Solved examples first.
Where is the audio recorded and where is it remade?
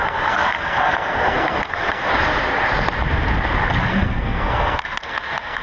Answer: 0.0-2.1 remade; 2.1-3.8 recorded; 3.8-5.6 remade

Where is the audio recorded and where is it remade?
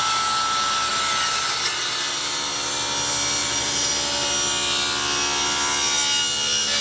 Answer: 0.0-3.4 recorded; 3.4-3.9 remade; 3.9-6.8 recorded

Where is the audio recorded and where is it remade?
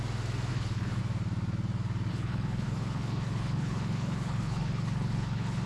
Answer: 0.0-0.5 recorded; 0.5-1.0 remade; 1.0-2.1 recorded; 2.1-5.7 remade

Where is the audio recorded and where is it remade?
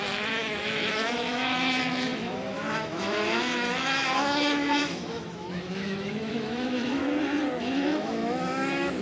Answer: 0.0-7.0 remade; 7.0-7.6 recorded; 7.6-9.0 remade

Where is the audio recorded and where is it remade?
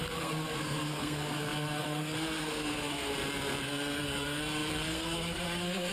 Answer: 0.0-3.1 remade; 3.1-3.6 recorded; 3.6-5.9 remade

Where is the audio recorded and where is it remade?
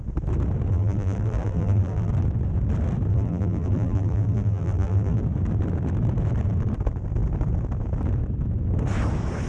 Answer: 0.0-0.7 recorded; 0.7-2.1 remade; 2.1-3.1 recorded; 3.1-5.2 remade; 5.2-9.5 recorded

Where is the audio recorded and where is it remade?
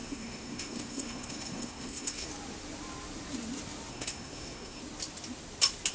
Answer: 0.0-2.3 remade; 2.3-3.9 recorded; 3.9-4.8 remade; 4.8-5.9 recorded